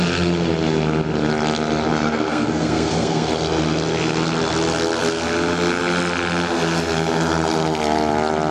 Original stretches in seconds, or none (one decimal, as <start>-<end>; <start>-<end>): 0.0-1.9; 3.3-8.5